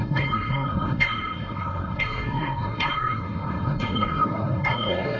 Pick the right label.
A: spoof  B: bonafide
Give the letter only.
A